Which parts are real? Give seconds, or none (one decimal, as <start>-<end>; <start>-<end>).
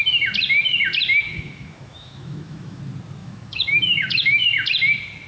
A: 0.0-1.3; 2.8-3.2; 4.4-5.3